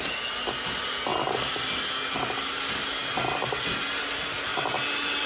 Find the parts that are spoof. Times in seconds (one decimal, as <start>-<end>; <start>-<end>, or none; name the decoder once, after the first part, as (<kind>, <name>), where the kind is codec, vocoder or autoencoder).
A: none